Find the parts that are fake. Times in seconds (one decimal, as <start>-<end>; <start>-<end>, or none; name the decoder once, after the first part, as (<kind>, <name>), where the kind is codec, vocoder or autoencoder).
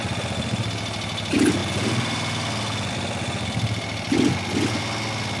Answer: none